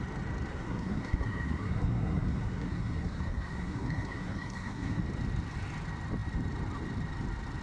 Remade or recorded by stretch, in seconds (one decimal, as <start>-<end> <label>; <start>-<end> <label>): 0.0-0.5 recorded; 0.5-5.0 remade; 5.0-7.6 recorded